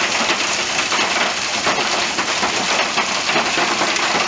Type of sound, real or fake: real